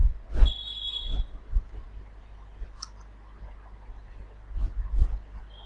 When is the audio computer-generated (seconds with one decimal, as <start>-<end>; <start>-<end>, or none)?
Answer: none